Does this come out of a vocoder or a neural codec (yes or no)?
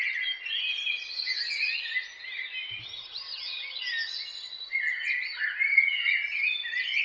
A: no